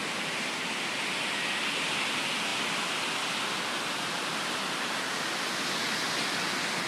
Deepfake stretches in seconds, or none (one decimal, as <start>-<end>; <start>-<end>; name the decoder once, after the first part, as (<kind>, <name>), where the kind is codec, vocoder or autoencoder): 0.0-0.6 (vocoder, BigVGAN v2)